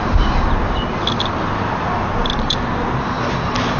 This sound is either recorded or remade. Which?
recorded